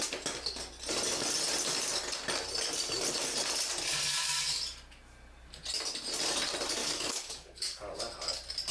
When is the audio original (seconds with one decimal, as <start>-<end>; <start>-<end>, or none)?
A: 0.0-6.8; 8.0-8.7